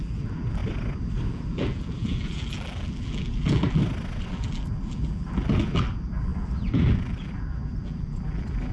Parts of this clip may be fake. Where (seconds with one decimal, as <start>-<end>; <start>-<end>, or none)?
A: 0.0-0.6; 1.3-3.8; 4.3-8.7